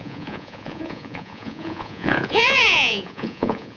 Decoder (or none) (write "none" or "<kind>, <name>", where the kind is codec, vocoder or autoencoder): vocoder, Vocos